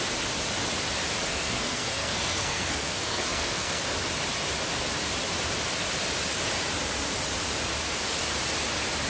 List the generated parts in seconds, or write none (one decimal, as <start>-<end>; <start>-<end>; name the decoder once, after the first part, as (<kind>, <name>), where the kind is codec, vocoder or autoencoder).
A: 1.3-3.8 (codec, SNAC)